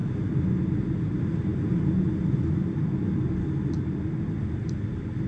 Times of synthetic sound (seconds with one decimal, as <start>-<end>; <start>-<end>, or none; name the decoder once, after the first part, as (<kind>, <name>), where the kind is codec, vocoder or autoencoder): none